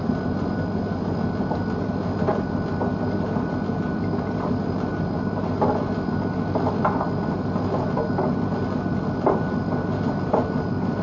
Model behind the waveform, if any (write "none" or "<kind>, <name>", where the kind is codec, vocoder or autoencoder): none